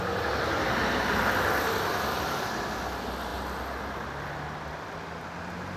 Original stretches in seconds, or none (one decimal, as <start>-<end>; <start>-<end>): 0.0-5.8